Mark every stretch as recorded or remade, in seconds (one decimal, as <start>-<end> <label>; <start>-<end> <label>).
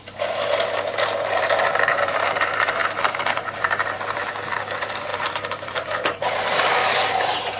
0.0-7.6 remade